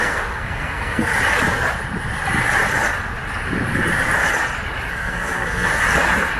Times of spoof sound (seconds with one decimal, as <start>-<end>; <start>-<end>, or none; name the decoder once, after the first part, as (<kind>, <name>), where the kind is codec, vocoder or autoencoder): 0.0-1.1 (codec, SNAC); 4.9-5.7